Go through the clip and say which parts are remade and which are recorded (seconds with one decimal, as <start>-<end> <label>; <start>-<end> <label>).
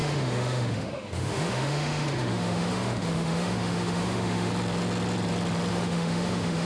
0.0-4.5 remade; 4.5-5.7 recorded; 5.7-6.7 remade